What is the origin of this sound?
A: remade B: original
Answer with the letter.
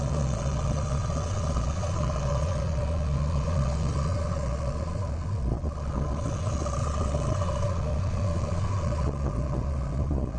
A